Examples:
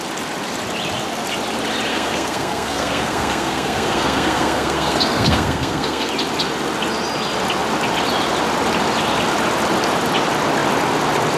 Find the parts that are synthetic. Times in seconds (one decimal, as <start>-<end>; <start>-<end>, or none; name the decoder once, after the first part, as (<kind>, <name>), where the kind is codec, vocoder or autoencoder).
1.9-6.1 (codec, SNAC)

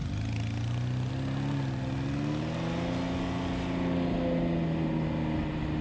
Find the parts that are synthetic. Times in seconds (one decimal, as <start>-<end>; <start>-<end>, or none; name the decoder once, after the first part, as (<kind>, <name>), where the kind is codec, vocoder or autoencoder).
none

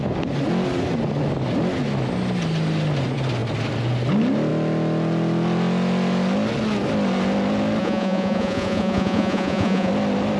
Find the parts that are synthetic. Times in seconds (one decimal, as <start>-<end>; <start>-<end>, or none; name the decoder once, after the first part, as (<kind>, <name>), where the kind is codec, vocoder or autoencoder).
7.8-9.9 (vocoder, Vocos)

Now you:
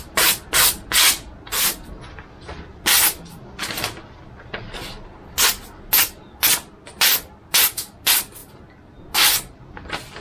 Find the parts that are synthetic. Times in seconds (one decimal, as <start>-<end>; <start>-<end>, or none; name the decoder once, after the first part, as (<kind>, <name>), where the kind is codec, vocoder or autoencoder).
none

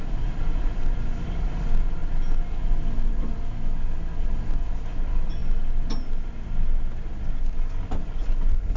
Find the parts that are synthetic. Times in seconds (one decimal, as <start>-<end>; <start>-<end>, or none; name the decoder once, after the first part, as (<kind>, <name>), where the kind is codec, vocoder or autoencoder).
none